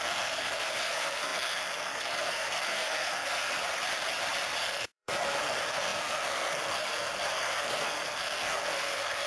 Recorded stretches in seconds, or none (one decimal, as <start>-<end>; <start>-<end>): 3.6-4.6

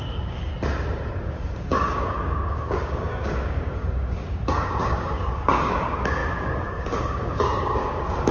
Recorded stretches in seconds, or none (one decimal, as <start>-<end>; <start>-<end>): 0.5-1.2

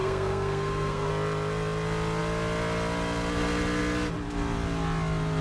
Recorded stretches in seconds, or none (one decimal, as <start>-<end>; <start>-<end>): 1.1-5.4